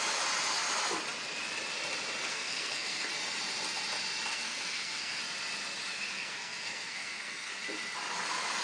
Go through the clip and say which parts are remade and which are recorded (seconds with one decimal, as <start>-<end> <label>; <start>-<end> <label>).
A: 0.0-2.3 recorded; 2.3-3.1 remade; 3.1-4.3 recorded; 4.3-5.2 remade; 5.2-5.9 recorded; 5.9-7.6 remade; 7.6-8.6 recorded